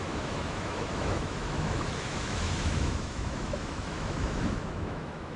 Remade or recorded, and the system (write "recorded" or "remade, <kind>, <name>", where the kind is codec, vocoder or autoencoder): remade, autoencoder, DAC-VAE